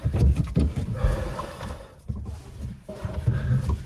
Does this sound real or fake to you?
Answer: real